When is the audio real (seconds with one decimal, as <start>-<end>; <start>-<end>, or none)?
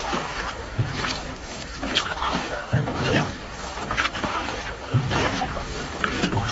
none